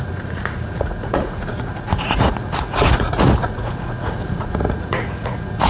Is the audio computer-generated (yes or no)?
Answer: yes